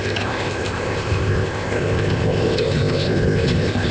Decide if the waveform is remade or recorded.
remade